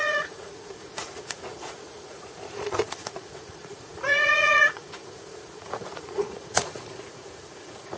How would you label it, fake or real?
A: fake